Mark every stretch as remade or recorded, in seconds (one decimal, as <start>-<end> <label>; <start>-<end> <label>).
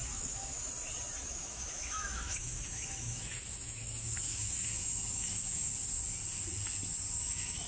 0.0-0.7 remade; 0.7-1.3 recorded; 1.3-5.7 remade; 5.7-7.2 recorded; 7.2-7.7 remade